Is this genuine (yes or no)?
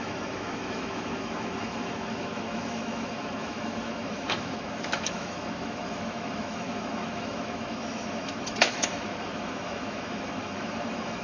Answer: no